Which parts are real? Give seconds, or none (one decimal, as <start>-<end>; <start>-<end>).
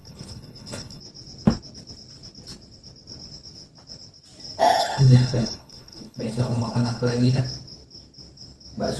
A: 1.0-4.8; 7.4-9.0